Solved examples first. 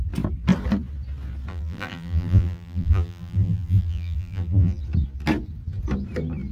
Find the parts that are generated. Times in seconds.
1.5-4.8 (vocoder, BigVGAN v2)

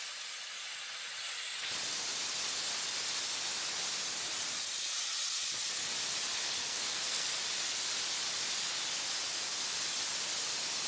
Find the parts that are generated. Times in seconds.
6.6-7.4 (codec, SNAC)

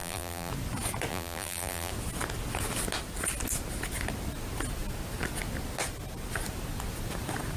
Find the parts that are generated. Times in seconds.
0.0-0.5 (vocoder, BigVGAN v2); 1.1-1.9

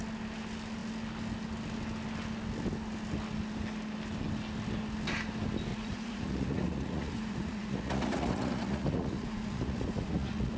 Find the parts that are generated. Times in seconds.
5.7-10.6 (vocoder, Vocos)

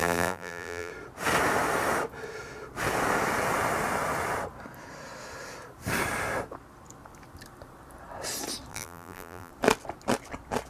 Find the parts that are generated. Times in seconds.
0.0-0.9 (vocoder, BigVGAN v2); 8.7-9.5

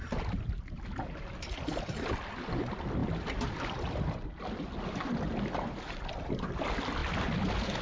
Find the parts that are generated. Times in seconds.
none